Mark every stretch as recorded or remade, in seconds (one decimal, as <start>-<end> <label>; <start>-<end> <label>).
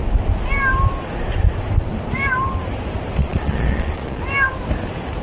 0.0-3.2 recorded; 3.2-4.2 remade; 4.2-5.2 recorded